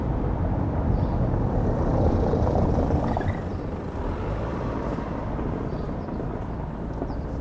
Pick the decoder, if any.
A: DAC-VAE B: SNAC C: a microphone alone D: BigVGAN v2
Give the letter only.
D